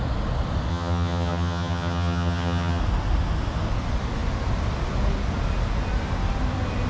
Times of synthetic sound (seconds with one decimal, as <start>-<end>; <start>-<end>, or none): 0.7-2.8